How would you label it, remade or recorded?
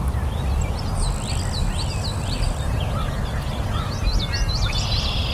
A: recorded